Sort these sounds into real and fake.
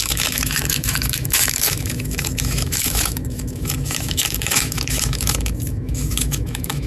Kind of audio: fake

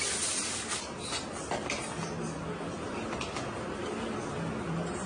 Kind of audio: real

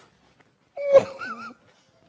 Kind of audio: real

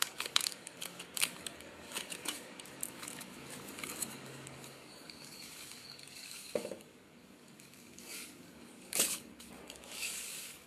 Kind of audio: fake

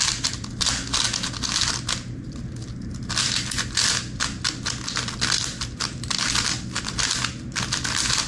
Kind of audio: real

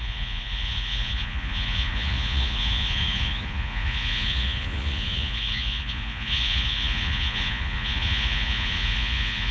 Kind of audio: fake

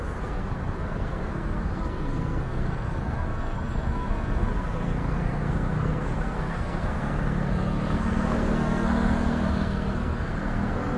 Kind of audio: fake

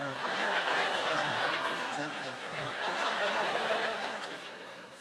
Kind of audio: fake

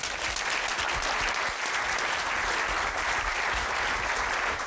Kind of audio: real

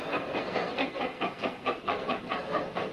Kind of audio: fake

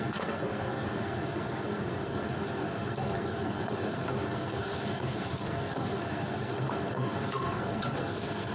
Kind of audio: fake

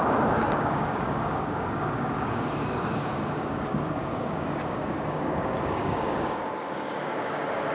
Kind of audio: fake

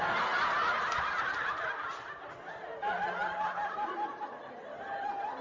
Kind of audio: real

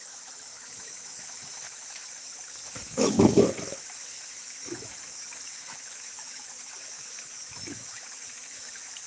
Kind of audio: fake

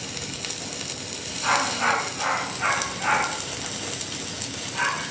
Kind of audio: real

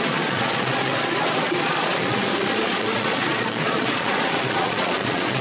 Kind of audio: fake